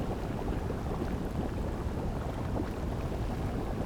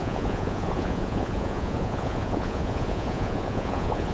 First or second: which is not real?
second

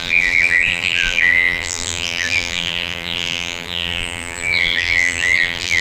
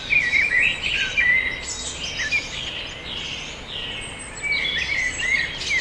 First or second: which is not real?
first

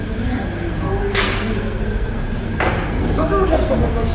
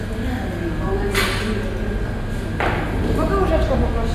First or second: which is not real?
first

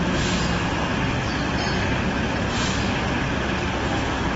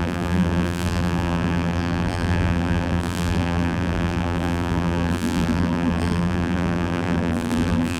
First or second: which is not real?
second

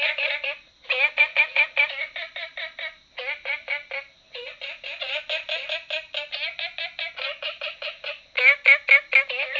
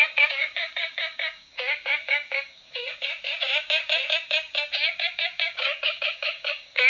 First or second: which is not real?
second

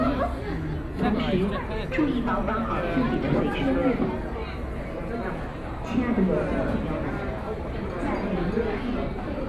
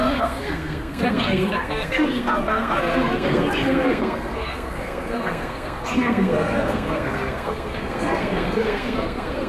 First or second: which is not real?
second